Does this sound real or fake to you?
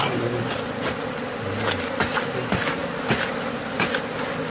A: real